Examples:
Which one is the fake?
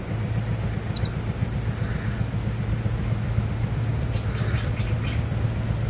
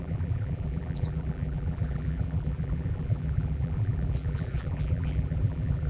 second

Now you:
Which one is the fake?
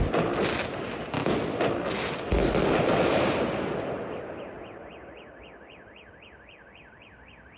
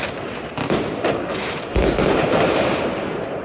second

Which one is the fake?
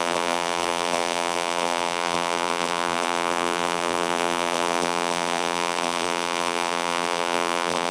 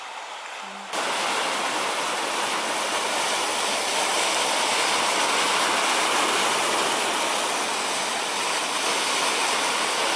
first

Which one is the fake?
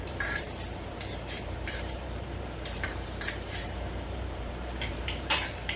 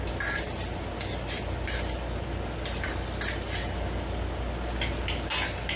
first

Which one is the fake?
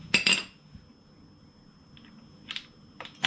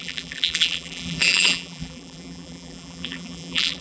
second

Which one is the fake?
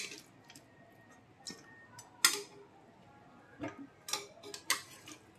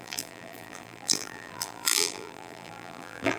second